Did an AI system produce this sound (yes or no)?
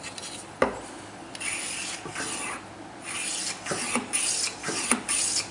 no